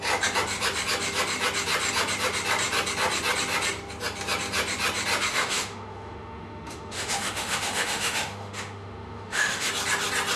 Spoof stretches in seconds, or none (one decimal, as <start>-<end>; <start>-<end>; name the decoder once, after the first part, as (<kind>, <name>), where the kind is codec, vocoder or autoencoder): 5.3-9.7 (autoencoder, DAC-VAE)

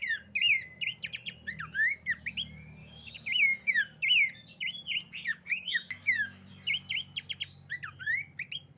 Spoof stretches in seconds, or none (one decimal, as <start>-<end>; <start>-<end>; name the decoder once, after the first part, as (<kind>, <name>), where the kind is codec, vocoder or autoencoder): 2.8-3.8 (autoencoder, DAC-VAE); 5.3-6.5

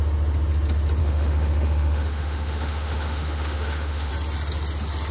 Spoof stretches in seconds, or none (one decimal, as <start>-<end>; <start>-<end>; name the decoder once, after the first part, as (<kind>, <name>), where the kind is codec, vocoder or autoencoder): 1.0-4.1 (autoencoder, DAC-VAE)

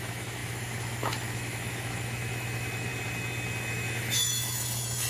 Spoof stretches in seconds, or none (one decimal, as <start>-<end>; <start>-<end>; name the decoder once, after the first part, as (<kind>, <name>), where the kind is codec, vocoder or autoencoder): 0.0-2.9 (autoencoder, DAC-VAE); 3.7-5.1

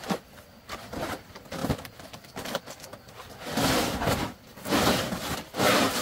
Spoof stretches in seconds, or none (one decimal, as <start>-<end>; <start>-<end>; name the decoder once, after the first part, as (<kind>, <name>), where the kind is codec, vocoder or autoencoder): none

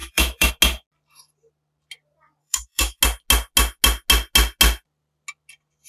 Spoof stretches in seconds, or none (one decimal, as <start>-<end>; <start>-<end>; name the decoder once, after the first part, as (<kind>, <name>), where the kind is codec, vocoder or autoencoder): 0.0-0.5 (autoencoder, DAC-VAE); 2.4-3.0

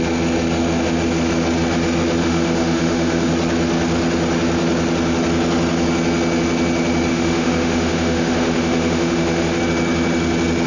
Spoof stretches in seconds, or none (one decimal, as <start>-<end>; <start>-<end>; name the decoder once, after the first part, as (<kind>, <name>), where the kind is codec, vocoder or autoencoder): 2.2-3.3 (autoencoder, DAC-VAE); 7.1-9.6

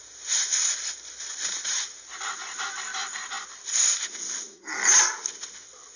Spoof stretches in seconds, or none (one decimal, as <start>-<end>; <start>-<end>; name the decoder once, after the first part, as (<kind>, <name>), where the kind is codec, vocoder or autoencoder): none